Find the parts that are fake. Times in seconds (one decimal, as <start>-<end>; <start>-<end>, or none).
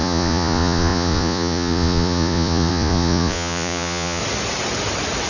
0.0-4.2